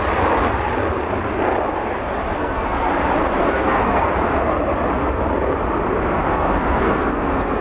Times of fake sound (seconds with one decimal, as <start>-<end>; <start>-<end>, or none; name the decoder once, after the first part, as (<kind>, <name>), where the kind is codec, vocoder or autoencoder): 2.3-2.9 (codec, SNAC); 3.4-4.1; 6.3-7.6